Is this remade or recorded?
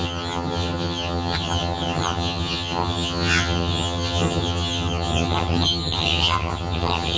remade